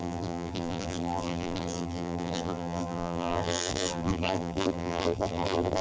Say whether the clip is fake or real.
fake